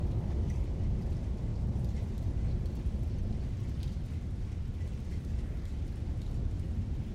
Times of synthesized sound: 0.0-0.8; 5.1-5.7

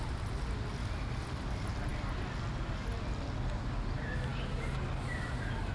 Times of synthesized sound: none